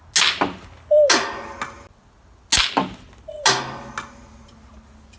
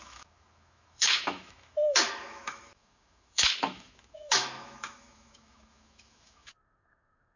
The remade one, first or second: second